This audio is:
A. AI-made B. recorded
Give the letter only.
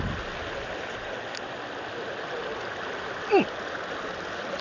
B